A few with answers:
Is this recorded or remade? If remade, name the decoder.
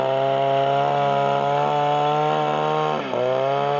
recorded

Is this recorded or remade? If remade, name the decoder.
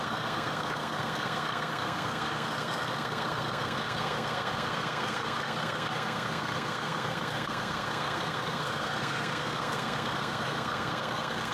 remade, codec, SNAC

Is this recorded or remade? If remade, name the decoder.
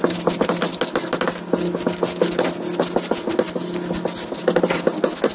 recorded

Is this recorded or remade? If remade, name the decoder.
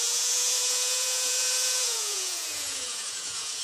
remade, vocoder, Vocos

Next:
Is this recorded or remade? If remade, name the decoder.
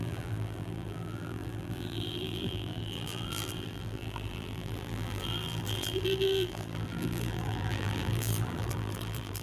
remade, vocoder, BigVGAN v2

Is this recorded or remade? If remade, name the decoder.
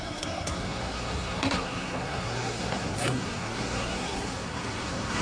remade, codec, SNAC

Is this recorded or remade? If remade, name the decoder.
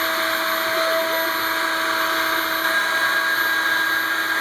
recorded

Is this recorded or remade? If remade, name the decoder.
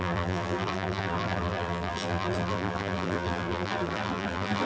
remade, vocoder, BigVGAN v2